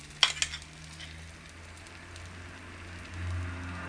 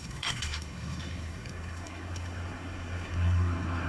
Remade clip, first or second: second